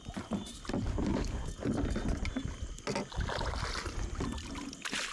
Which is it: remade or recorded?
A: recorded